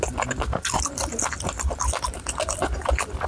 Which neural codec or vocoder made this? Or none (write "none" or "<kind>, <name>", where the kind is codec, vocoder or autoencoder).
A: none